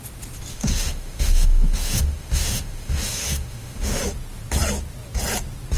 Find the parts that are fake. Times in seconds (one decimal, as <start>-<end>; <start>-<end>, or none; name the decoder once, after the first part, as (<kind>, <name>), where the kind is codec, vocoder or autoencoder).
0.5-4.0 (autoencoder, DAC-VAE)